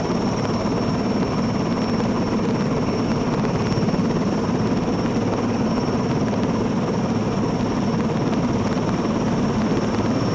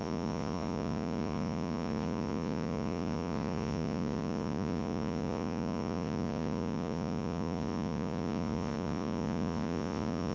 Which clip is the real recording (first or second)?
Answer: first